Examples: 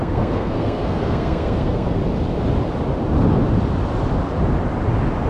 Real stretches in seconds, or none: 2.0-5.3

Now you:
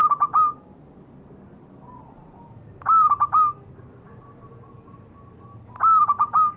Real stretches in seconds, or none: 0.0-6.6

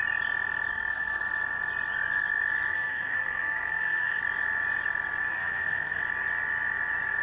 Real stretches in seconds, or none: 0.0-0.7; 1.2-2.7; 4.2-5.3; 6.0-7.2

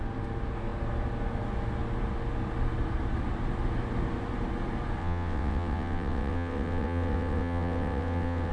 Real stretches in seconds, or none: 0.0-5.0

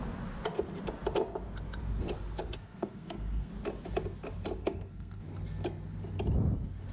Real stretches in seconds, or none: 0.0-2.4; 3.5-4.6; 5.2-6.9

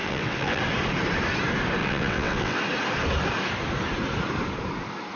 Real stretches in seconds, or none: 0.6-1.8; 2.6-5.2

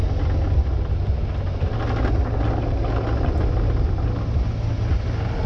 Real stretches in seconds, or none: 0.0-5.5

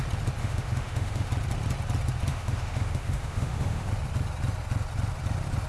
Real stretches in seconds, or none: 0.0-0.4; 1.3-2.3; 3.9-5.7